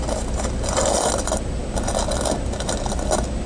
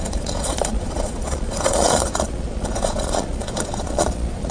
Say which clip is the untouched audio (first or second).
first